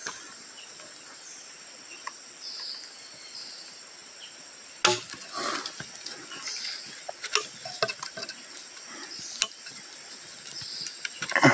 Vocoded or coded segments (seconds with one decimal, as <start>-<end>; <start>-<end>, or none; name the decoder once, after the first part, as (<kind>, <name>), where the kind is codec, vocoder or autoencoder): none